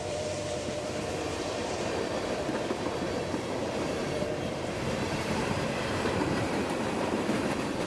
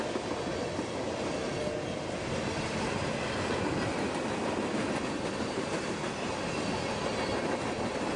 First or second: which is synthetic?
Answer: first